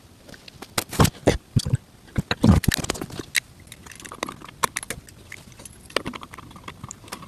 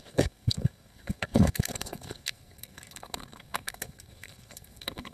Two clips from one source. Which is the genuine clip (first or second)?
first